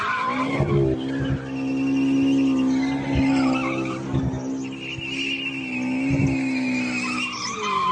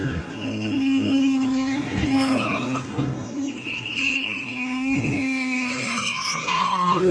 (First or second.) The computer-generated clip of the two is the second